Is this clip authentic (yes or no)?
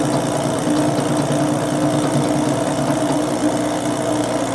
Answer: yes